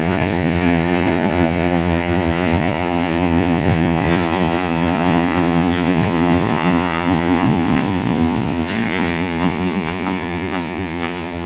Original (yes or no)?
no